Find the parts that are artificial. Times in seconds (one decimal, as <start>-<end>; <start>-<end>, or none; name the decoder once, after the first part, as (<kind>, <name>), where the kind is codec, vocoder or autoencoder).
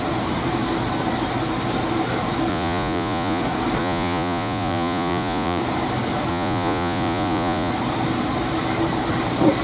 2.5-3.4 (vocoder, Vocos); 3.8-5.6; 6.3-7.7